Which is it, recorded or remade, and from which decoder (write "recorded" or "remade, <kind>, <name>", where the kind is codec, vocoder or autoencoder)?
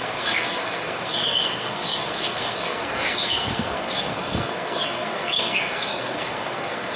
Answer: remade, codec, SNAC